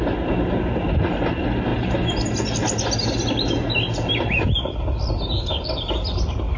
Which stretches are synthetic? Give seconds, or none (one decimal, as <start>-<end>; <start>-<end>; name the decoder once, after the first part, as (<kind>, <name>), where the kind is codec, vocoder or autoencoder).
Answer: none